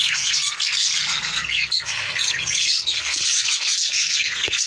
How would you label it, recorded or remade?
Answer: remade